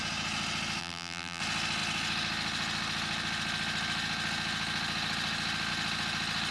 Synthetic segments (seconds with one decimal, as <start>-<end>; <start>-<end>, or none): 0.8-1.4